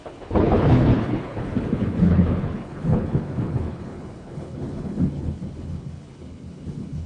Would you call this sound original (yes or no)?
no